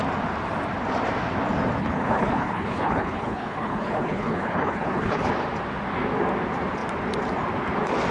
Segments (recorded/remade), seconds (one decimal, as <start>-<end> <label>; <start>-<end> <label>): 0.0-1.8 recorded; 1.8-5.3 remade; 5.3-8.1 recorded